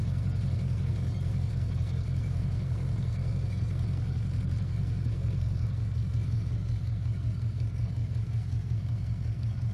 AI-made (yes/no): yes